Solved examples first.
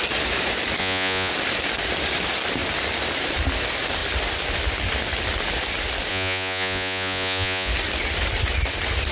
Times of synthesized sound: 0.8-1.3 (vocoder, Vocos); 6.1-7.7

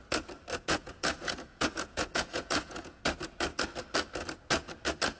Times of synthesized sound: 0.5-3.0 (vocoder, Vocos)